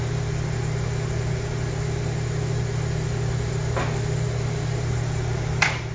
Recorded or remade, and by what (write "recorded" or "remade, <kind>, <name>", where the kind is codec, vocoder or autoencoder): recorded